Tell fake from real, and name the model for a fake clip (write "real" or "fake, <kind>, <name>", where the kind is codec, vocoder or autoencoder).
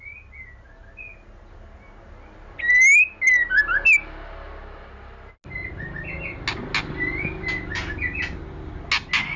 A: real